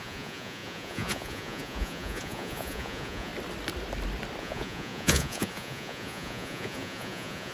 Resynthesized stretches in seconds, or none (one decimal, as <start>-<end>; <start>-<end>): 0.0-3.3; 4.4-7.5